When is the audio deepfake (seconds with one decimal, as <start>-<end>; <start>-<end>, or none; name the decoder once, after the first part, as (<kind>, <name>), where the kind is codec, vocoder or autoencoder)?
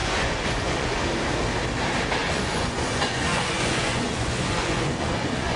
0.0-1.0 (vocoder, Vocos); 2.2-5.6